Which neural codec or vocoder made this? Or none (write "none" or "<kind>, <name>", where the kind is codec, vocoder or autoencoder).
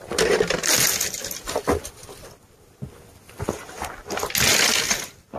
none